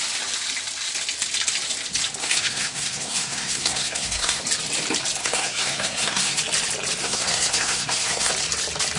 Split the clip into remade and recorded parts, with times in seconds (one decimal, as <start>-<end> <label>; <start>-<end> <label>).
0.0-2.2 recorded; 2.2-4.4 remade; 4.4-5.2 recorded; 5.2-6.4 remade; 6.4-7.0 recorded; 7.0-8.3 remade; 8.3-9.0 recorded